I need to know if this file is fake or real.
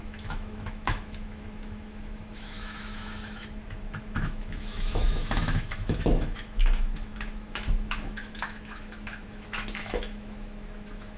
fake